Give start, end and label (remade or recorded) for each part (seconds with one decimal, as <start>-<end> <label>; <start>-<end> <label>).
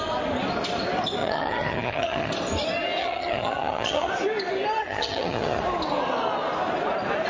0.0-1.2 recorded; 1.2-2.3 remade; 2.3-3.0 recorded; 3.0-4.1 remade; 4.1-4.8 recorded; 4.8-5.6 remade; 5.6-7.3 recorded